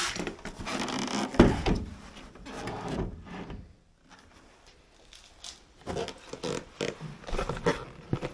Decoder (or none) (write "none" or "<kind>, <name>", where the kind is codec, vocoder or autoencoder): none